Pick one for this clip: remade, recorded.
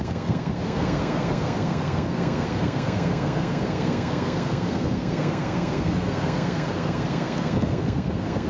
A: remade